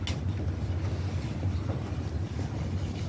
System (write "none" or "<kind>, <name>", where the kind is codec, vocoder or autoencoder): none